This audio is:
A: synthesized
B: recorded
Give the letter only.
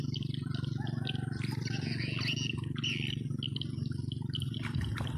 B